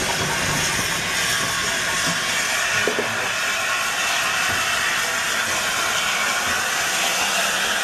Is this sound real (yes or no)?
yes